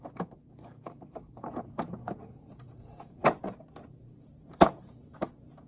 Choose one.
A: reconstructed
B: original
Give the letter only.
A